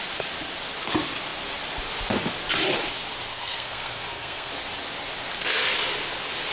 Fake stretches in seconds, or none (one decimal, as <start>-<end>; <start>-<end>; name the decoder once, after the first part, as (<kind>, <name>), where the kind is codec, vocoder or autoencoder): 3.3-4.5 (codec, SNAC)